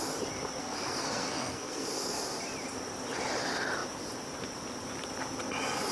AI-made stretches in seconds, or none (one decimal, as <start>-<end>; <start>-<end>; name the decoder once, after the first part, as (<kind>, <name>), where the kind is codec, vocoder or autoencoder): 0.6-2.2 (codec, SNAC)